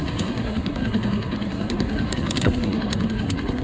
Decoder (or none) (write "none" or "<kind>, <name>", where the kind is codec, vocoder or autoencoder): codec, SNAC